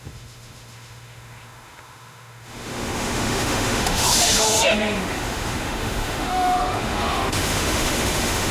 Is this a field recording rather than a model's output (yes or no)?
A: no